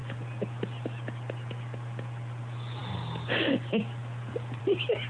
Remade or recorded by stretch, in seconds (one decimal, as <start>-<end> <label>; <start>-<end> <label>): 0.0-5.1 recorded